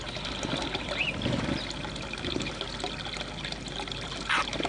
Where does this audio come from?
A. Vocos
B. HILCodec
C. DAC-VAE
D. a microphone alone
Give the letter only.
D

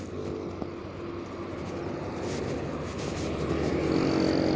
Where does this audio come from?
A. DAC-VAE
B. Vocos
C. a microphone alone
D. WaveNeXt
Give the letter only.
C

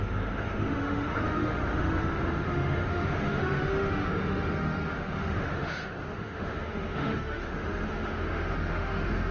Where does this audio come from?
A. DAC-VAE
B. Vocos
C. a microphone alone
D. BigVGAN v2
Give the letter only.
A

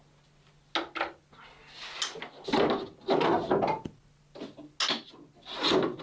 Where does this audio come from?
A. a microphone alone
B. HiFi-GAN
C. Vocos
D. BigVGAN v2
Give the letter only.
A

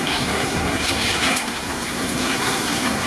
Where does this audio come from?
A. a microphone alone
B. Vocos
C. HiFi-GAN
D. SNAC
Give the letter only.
D